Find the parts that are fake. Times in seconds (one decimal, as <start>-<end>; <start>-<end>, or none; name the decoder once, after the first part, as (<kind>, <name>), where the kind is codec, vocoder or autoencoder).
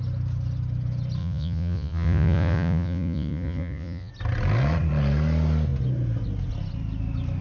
1.2-4.1 (vocoder, Vocos)